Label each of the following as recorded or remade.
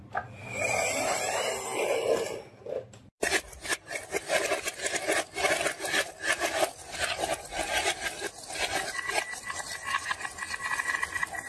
recorded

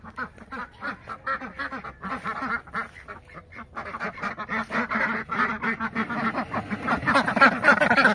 recorded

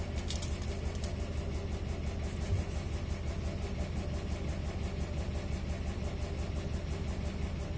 recorded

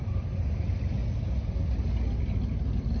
recorded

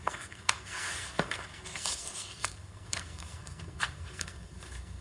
remade